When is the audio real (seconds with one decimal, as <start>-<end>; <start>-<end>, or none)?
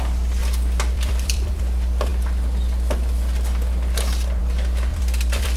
0.0-0.4; 1.6-4.9